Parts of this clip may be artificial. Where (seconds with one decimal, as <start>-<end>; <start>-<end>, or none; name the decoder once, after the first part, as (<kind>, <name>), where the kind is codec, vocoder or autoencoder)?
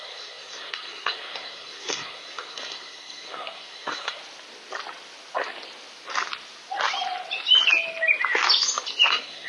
0.0-4.2 (codec, SNAC); 9.1-9.5